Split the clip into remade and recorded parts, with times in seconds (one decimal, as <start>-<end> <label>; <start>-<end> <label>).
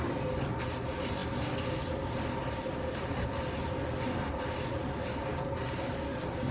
0.0-2.4 recorded; 2.4-3.3 remade; 3.3-6.5 recorded